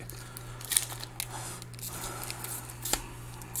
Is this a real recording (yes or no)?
yes